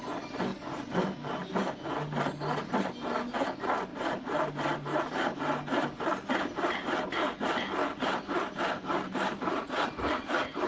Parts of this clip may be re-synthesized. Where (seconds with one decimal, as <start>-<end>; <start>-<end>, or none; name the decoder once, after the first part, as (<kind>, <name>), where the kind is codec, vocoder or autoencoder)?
3.9-5.1 (vocoder, BigVGAN v2); 7.8-10.7